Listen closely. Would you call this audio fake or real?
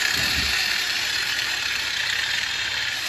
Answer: fake